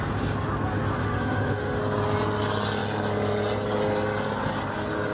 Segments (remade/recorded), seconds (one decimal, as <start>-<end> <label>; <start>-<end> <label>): 0.0-1.0 recorded; 1.0-1.8 remade; 1.8-5.1 recorded